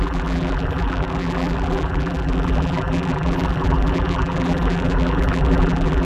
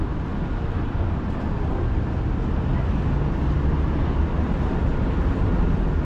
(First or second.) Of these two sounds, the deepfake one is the first